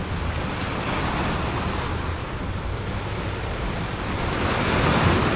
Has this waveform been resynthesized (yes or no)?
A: no